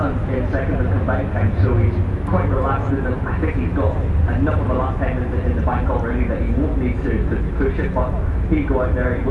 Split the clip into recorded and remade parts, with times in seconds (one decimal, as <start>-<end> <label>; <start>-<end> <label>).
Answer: 0.0-9.3 recorded